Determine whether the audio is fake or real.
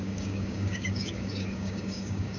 fake